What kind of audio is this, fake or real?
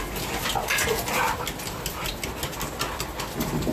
real